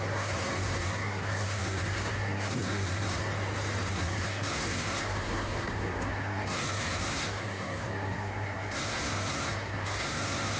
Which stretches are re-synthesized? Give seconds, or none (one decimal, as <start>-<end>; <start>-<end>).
0.0-3.3; 3.9-10.6